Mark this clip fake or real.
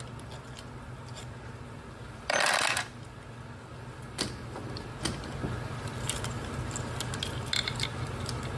real